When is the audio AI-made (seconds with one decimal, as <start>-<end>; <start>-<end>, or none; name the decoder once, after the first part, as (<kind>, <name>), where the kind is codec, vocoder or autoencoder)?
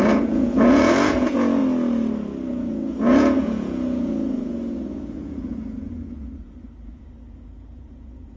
0.0-1.6 (vocoder, Vocos); 2.5-8.4